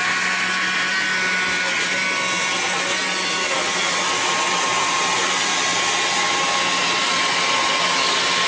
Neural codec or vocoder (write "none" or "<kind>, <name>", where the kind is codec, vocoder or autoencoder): none